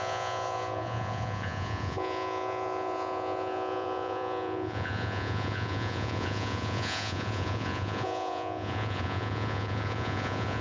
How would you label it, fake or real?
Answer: fake